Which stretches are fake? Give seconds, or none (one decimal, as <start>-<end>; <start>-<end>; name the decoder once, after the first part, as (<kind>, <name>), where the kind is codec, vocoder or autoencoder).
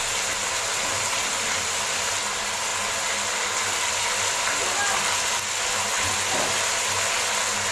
none